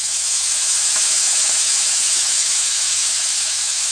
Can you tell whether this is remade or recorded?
remade